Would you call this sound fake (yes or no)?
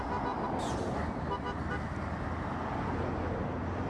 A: no